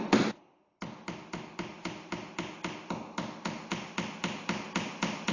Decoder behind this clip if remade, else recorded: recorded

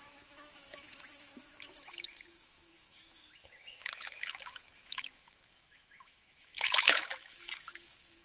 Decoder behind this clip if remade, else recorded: remade, autoencoder, DAC-VAE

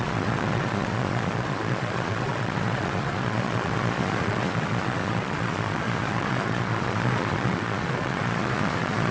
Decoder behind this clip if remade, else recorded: remade, vocoder, Vocos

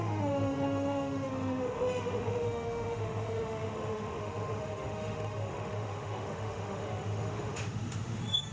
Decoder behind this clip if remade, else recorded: remade, autoencoder, DAC-VAE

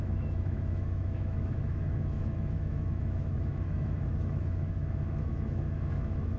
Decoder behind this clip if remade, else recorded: remade, autoencoder, DAC-VAE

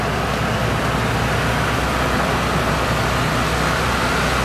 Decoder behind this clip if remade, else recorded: recorded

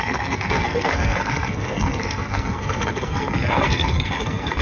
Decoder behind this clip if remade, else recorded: remade, codec, SNAC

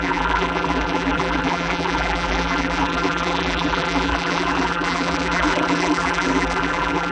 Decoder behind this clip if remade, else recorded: remade, vocoder, BigVGAN v2